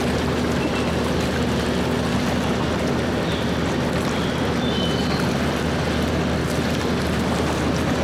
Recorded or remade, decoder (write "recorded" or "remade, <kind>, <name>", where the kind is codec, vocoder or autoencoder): recorded